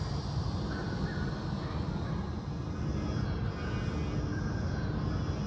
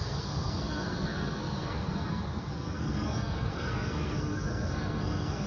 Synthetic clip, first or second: second